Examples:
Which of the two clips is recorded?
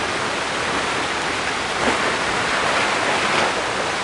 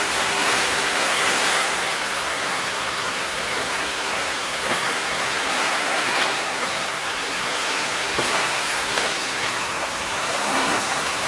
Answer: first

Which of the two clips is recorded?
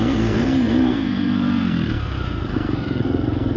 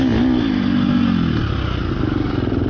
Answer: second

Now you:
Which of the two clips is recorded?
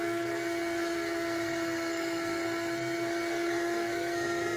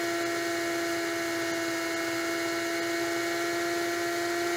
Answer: second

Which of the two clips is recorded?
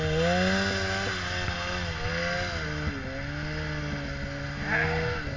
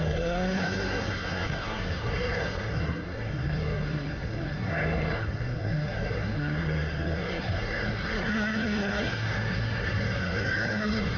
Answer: first